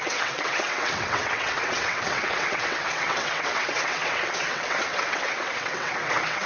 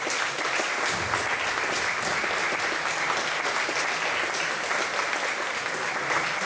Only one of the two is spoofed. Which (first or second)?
first